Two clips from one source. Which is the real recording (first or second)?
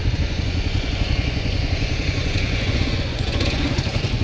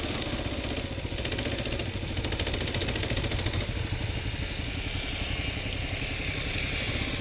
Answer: second